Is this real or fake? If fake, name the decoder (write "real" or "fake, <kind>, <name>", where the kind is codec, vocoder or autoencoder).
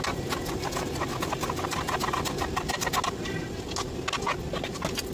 real